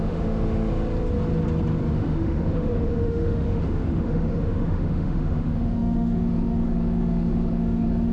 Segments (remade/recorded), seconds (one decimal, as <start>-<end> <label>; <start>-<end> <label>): 0.0-0.7 remade; 0.7-1.9 recorded; 1.9-8.1 remade